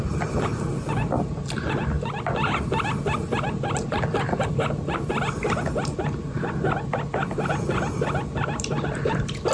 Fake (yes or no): no